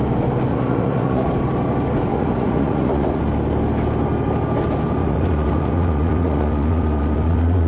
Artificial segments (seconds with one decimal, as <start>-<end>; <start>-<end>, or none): 0.5-1.3; 2.1-3.2; 5.0-7.7